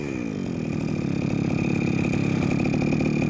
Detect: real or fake real